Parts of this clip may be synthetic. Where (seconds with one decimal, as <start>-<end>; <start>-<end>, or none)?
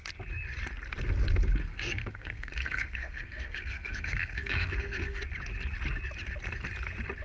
1.6-5.2